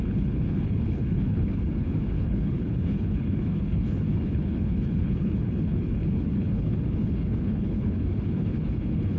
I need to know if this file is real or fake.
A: fake